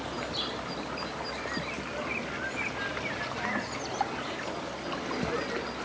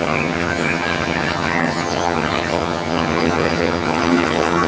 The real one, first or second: first